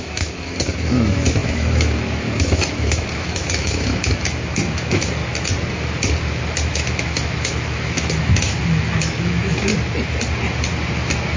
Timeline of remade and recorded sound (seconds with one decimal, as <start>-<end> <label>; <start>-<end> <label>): 0.0-5.2 remade; 5.2-6.7 recorded; 6.7-9.7 remade; 9.7-11.4 recorded